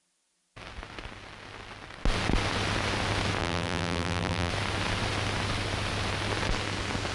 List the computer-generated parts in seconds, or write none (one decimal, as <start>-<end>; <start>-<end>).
3.4-4.5